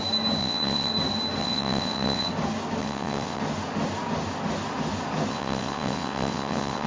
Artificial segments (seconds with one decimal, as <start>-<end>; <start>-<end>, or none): 0.4-0.9; 1.4-2.3; 2.8-3.4; 5.3-6.9